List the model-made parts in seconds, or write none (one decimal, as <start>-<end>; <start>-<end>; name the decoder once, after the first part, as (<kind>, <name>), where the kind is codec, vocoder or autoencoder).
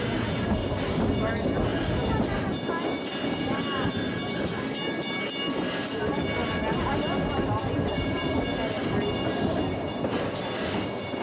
none